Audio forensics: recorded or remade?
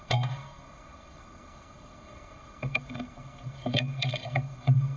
remade